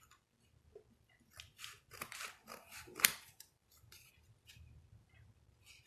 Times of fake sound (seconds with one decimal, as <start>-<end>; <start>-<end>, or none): 2.4-4.1